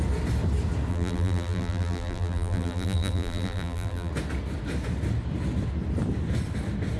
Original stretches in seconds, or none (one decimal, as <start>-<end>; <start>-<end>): 0.0-0.9; 4.1-7.0